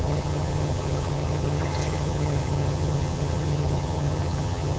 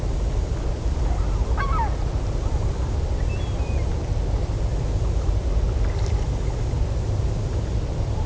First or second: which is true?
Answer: second